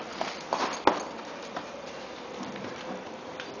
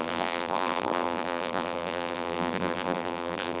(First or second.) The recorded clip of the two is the first